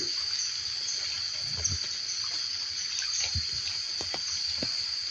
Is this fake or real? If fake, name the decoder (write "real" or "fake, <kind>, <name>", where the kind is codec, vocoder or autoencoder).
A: real